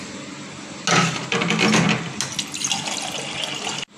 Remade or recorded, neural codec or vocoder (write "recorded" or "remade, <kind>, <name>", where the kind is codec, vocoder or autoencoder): recorded